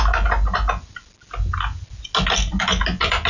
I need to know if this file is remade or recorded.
recorded